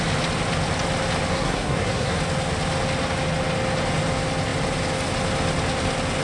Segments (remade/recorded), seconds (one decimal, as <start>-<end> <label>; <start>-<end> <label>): 0.0-1.3 recorded; 1.3-2.2 remade; 2.2-6.2 recorded